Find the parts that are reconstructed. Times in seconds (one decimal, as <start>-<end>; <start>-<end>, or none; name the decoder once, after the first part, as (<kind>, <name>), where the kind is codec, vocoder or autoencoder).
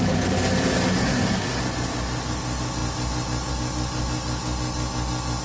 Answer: 1.0-1.6 (codec, SNAC)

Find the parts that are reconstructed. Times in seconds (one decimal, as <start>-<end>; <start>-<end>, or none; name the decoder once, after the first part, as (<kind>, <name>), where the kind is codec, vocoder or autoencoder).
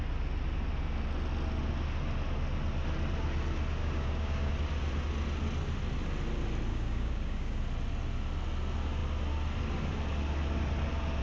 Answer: 3.8-4.5 (codec, DAC); 6.7-7.6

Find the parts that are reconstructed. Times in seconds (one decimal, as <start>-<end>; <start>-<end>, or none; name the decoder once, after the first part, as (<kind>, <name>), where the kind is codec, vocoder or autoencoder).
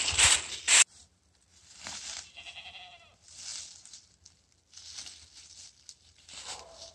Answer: none